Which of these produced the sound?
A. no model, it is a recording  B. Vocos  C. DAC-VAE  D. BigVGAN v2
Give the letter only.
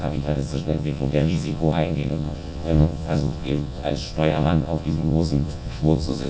B